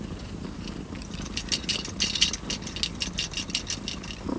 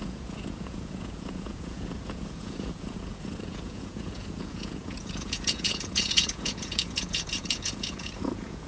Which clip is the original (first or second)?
first